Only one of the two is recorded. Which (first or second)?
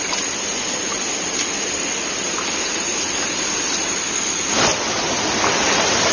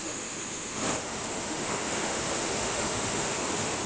first